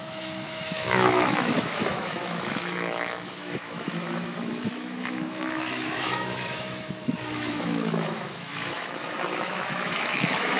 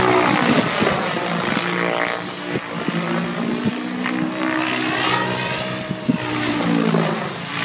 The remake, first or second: first